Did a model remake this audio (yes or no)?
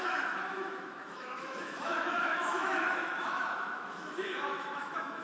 yes